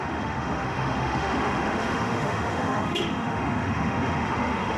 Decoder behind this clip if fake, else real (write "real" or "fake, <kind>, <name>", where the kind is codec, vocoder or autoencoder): fake, autoencoder, DAC-VAE